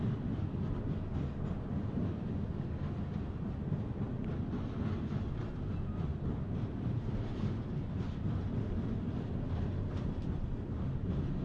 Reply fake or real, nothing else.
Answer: real